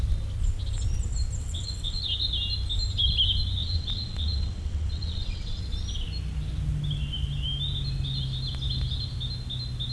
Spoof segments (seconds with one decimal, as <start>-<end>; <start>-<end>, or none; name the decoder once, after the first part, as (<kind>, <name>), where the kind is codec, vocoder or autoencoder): 1.4-2.0 (vocoder, WaveNeXt); 3.6-5.6